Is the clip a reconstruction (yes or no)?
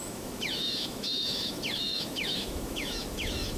yes